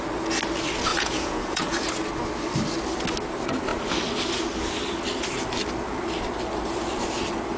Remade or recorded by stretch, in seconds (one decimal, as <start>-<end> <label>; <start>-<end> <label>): 0.0-0.9 recorded; 0.9-1.9 remade; 1.9-7.6 recorded